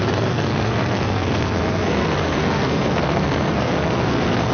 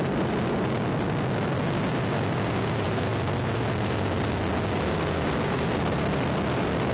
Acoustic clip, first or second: second